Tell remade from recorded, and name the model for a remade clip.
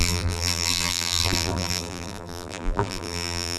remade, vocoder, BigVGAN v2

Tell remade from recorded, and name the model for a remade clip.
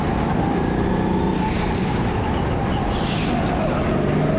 recorded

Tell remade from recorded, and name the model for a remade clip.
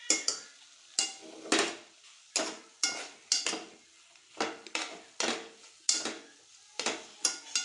recorded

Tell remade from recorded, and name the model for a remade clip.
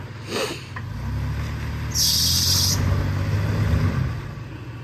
recorded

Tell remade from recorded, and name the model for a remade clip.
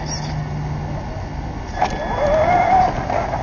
recorded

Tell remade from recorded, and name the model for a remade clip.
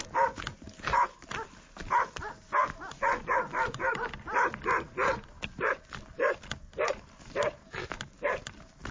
recorded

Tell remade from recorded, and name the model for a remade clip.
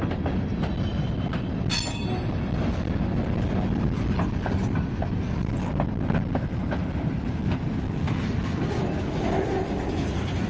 recorded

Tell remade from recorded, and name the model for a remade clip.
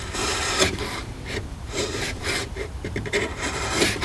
remade, vocoder, BigVGAN v2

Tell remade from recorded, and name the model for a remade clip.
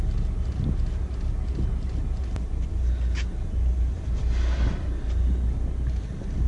recorded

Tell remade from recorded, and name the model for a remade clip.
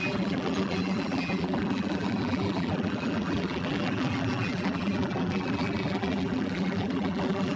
remade, vocoder, BigVGAN v2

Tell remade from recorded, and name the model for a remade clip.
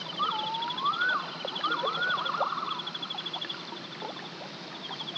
recorded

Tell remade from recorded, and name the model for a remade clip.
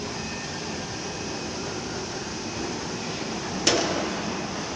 remade, vocoder, BigVGAN v2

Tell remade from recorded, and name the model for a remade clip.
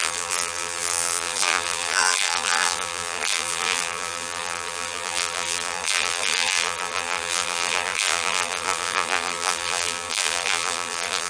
remade, vocoder, BigVGAN v2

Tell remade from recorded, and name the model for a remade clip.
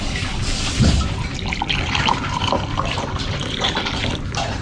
remade, vocoder, BigVGAN v2